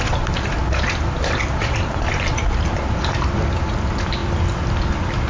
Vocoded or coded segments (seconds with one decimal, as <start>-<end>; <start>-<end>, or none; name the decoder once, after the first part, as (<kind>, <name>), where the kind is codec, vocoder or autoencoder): none